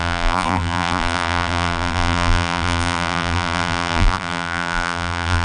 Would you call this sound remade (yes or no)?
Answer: yes